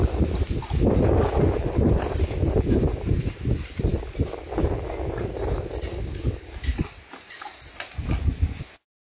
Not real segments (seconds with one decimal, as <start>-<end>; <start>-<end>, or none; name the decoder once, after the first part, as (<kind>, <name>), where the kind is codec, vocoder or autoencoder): 0.0-2.6 (vocoder, BigVGAN v2)